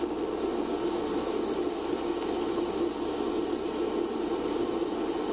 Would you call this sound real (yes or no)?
yes